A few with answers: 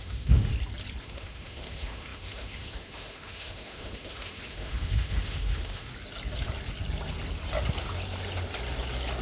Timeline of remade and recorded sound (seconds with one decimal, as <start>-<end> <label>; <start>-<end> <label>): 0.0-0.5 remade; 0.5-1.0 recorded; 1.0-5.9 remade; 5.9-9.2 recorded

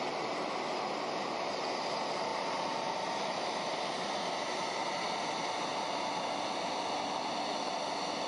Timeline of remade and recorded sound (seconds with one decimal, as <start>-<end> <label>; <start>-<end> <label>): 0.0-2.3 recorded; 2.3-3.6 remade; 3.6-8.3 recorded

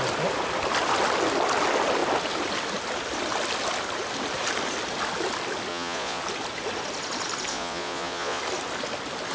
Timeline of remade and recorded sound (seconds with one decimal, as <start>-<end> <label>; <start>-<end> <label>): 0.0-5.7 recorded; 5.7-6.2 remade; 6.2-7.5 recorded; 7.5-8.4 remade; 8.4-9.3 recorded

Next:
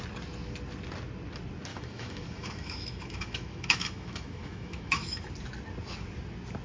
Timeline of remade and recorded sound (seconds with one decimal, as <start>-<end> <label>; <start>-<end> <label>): 0.0-1.7 recorded; 1.7-5.3 remade; 5.3-6.6 recorded